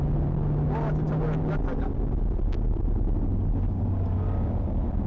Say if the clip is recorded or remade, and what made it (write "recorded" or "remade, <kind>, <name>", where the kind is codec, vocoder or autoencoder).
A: recorded